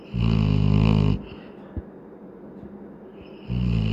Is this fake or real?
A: real